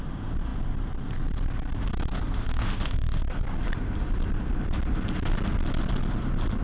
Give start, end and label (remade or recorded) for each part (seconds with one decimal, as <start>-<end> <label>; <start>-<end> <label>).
0.0-2.4 recorded; 2.4-3.2 remade; 3.2-6.6 recorded